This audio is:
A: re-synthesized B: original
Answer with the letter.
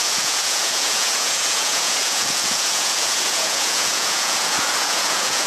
A